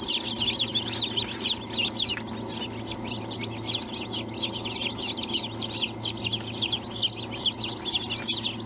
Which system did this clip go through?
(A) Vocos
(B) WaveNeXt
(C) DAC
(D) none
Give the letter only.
D